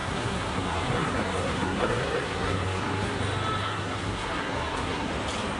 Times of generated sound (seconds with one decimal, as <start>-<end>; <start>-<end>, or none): 0.0-3.2; 3.6-5.1